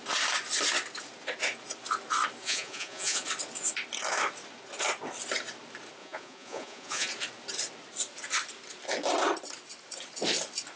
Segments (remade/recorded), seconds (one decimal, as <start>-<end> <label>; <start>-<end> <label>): 0.0-2.4 recorded; 2.4-3.3 remade; 3.3-6.0 recorded; 6.0-7.1 remade; 7.1-10.8 recorded